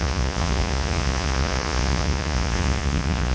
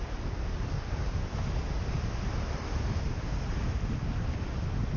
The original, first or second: second